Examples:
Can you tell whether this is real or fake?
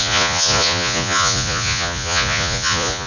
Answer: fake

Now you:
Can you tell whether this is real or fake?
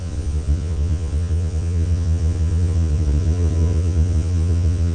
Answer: fake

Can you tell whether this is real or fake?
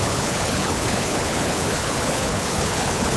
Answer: fake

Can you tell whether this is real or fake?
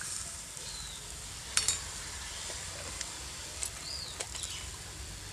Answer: fake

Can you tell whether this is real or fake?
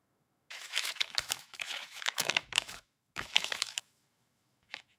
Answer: fake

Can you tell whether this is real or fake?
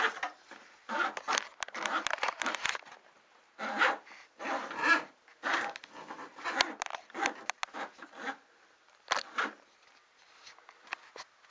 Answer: real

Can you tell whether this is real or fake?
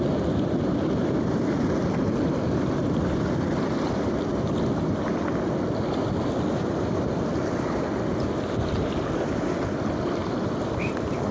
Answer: real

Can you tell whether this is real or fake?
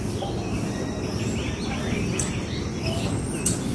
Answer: real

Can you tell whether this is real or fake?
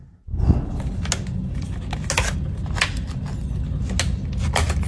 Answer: real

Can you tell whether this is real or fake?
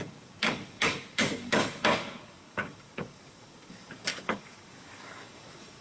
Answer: fake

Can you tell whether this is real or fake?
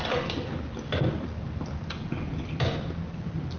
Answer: real